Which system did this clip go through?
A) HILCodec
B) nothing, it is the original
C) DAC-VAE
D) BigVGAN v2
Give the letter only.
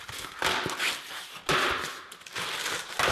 B